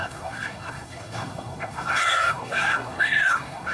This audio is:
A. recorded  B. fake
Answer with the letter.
B